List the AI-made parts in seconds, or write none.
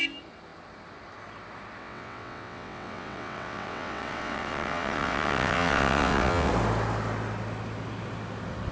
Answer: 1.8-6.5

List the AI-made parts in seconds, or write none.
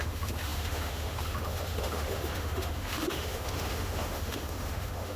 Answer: 0.0-5.2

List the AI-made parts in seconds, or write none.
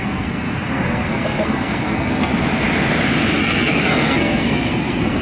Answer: 0.0-2.3; 3.4-5.2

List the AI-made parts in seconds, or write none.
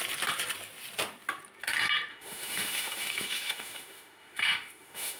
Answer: 2.1-5.2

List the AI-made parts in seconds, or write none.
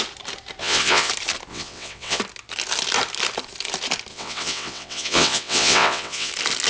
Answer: 0.6-1.1; 1.5-2.2; 4.1-6.3